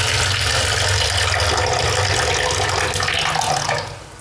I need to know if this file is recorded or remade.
recorded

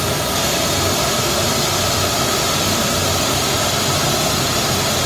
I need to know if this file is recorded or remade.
recorded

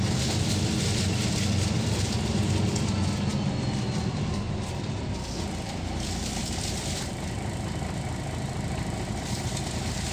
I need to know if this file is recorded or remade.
remade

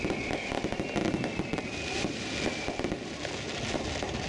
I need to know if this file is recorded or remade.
remade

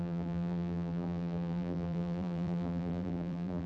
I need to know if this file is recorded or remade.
remade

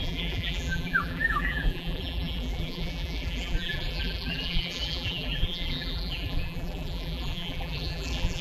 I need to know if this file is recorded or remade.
remade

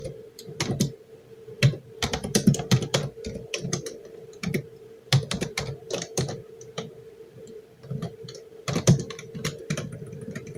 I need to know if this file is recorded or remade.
remade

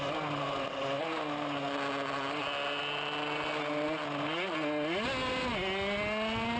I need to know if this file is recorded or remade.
recorded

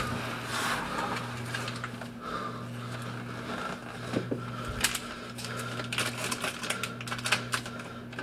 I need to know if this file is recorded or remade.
recorded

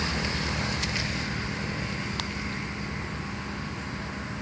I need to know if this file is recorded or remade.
recorded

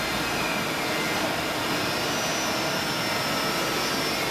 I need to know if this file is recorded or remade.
recorded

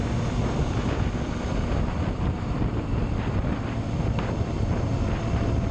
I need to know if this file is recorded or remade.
remade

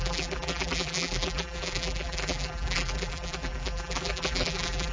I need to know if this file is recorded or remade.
remade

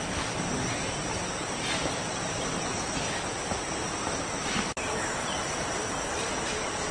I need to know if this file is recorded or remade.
remade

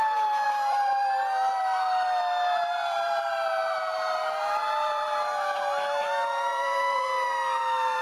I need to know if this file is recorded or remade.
remade